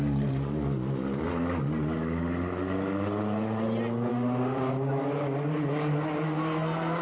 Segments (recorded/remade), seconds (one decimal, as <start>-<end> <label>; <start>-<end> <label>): 0.0-4.1 recorded; 4.1-4.7 remade; 4.7-7.0 recorded